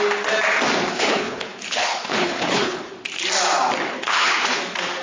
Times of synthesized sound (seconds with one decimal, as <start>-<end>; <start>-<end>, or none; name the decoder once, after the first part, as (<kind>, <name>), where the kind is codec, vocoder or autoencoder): 0.9-2.9 (codec, HILCodec); 3.9-4.6